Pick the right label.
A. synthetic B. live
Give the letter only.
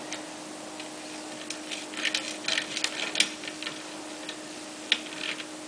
B